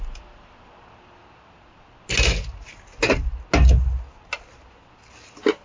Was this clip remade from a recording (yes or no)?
no